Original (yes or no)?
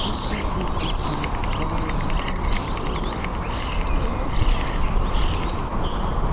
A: yes